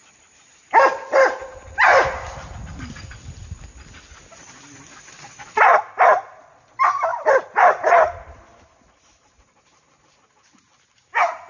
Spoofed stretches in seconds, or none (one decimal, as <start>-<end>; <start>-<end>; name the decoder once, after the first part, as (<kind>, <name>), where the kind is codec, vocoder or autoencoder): 0.0-3.8 (vocoder, BigVGAN v2); 7.1-10.1